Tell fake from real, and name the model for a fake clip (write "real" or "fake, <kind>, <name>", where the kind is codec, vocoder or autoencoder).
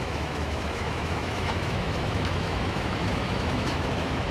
fake, autoencoder, DAC-VAE